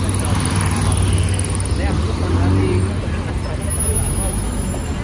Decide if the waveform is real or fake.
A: real